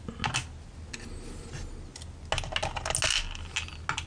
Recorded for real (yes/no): yes